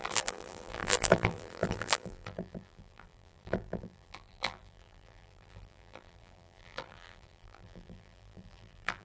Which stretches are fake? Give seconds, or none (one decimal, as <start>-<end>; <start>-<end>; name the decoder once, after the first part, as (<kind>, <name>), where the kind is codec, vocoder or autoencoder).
0.0-9.0 (vocoder, BigVGAN v2)